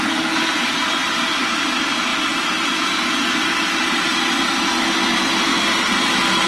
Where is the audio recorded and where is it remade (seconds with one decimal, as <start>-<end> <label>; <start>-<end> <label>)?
0.0-1.0 recorded; 1.0-1.7 remade; 1.7-6.5 recorded